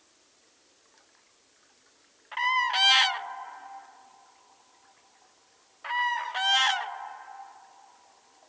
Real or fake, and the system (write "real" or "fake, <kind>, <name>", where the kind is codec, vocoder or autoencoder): real